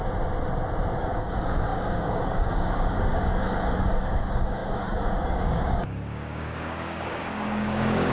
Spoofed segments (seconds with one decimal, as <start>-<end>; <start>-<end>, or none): 1.0-8.1